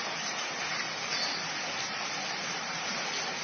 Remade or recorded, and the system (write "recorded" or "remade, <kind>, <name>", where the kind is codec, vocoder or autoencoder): recorded